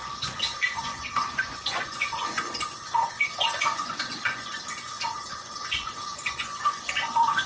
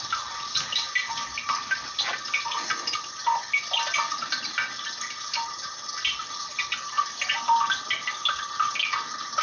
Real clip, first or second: second